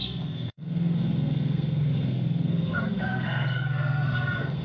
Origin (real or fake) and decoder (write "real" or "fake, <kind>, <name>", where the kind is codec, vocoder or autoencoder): fake, codec, SNAC